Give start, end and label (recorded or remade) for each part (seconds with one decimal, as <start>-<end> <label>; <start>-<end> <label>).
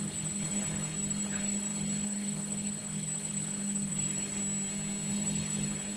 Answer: 0.0-4.4 remade; 4.4-5.1 recorded; 5.1-6.0 remade